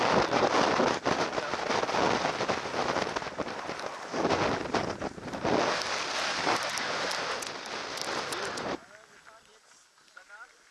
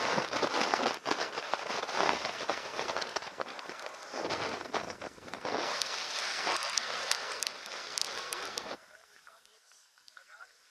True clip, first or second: first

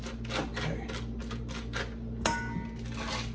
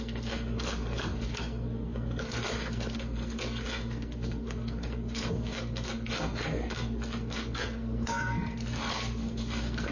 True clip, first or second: first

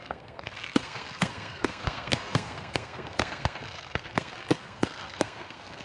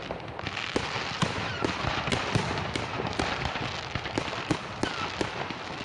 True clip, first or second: second